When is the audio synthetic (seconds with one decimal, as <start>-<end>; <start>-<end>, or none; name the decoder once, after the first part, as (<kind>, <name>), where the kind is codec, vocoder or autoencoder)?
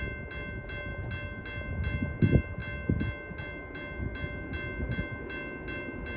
none